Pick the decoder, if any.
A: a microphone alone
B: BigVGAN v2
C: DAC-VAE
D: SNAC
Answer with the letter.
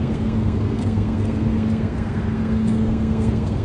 D